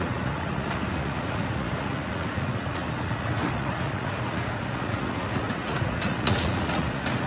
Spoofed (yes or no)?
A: yes